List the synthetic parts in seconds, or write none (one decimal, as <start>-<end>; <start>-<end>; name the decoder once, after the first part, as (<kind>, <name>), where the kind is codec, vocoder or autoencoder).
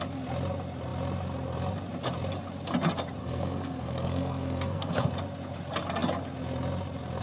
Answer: 3.2-5.1 (codec, SNAC)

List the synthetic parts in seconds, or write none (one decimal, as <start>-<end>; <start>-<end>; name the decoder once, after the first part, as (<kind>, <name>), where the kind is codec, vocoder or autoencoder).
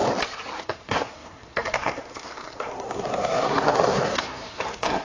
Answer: 0.6-5.0 (codec, SNAC)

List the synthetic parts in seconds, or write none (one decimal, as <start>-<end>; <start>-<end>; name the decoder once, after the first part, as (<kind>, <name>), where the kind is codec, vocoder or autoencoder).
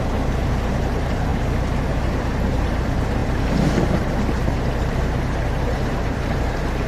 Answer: 0.0-1.3 (vocoder, BigVGAN v2); 1.9-3.2; 3.8-6.9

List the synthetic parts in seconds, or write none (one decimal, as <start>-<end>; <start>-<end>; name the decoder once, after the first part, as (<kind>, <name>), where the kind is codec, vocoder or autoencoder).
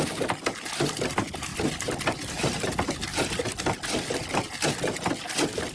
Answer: none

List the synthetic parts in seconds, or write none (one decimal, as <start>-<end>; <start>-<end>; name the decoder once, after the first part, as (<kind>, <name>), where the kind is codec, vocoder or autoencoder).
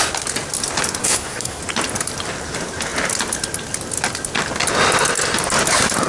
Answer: 1.0-1.6 (codec, SNAC)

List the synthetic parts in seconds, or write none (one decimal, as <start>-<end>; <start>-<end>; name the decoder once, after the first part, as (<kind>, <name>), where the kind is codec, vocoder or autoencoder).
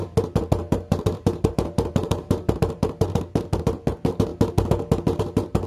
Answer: 0.6-3.2 (vocoder, BigVGAN v2)